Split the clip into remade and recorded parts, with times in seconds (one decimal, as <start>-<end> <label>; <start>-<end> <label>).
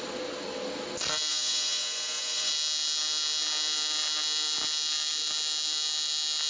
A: 0.0-1.3 recorded; 1.3-2.5 remade; 2.5-6.5 recorded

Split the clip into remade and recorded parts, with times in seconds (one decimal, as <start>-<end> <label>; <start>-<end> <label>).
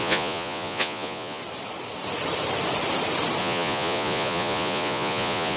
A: 0.0-1.4 remade; 1.4-3.4 recorded; 3.4-5.6 remade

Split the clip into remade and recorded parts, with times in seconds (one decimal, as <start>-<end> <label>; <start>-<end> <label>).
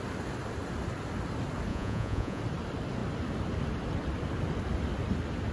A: 0.0-1.7 recorded; 1.7-2.4 remade; 2.4-5.5 recorded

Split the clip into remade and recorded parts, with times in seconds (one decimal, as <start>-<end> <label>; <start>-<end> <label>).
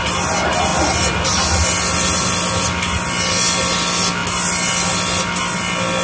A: 0.0-6.0 recorded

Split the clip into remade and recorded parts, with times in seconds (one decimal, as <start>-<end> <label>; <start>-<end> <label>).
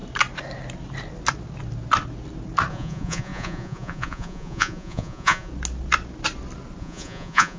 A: 0.0-2.7 recorded; 2.7-5.5 remade; 5.5-6.8 recorded; 6.8-7.6 remade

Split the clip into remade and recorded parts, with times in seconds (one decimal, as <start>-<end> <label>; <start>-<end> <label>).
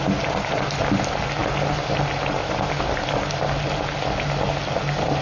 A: 0.0-5.2 recorded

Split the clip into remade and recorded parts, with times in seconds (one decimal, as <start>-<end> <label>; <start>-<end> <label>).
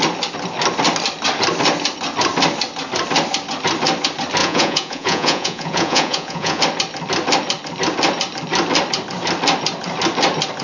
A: 0.0-4.4 recorded; 4.4-6.6 remade; 6.6-10.6 recorded